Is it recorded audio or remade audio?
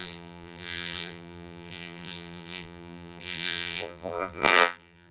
remade